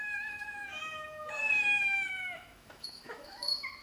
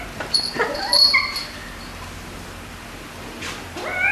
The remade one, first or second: first